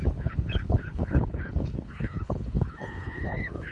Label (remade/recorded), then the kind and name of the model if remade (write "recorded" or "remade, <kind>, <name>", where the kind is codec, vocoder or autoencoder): remade, codec, HILCodec